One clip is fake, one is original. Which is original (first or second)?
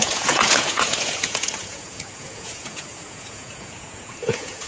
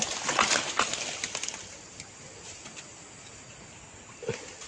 second